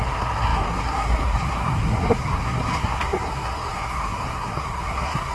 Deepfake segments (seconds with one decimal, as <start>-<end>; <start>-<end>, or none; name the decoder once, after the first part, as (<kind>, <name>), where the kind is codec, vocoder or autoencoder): 0.0-5.3 (codec, SNAC)